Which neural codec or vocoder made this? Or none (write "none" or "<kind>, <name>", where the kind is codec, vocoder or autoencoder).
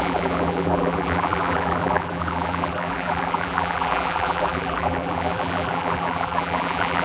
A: vocoder, BigVGAN v2